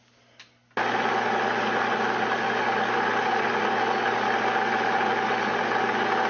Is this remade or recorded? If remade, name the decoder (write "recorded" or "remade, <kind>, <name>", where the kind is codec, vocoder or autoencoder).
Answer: recorded